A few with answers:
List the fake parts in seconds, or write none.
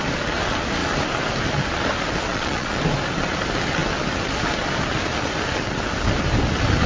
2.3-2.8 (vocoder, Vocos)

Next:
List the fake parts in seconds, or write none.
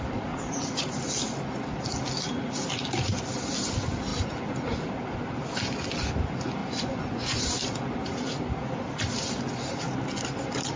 6.6-7.4 (vocoder, Vocos)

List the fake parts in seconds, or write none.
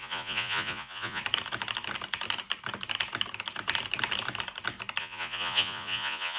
0.0-1.2 (vocoder, Vocos); 5.0-6.4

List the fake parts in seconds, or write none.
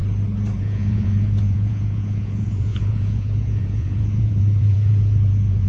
0.6-5.7 (vocoder, Vocos)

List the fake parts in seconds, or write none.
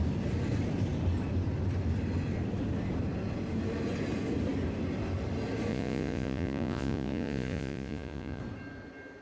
5.7-8.4 (vocoder, Vocos)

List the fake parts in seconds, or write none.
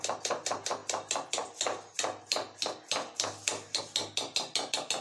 none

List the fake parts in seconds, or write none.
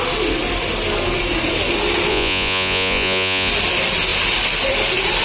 2.1-3.5 (vocoder, Vocos)